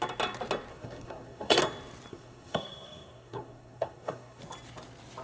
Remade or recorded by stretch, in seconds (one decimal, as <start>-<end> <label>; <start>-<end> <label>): 0.0-0.7 recorded; 0.7-1.6 remade; 1.6-2.1 recorded; 2.1-4.4 remade; 4.4-5.2 recorded